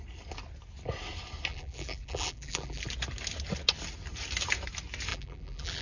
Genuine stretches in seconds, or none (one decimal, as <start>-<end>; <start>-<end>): 0.0-1.5; 2.8-5.1